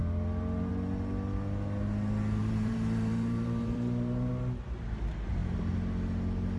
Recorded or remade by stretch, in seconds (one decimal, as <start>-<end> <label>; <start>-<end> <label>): 0.0-2.4 recorded; 2.4-4.3 remade; 4.3-6.6 recorded